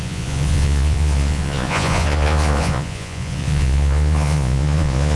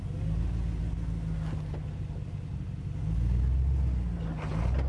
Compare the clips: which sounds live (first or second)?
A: second